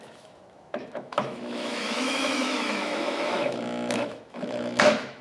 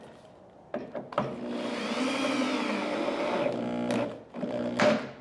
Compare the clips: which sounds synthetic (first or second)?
first